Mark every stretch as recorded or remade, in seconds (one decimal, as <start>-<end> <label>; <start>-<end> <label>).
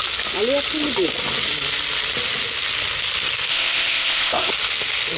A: 0.0-3.5 recorded; 3.5-4.5 remade; 4.5-5.2 recorded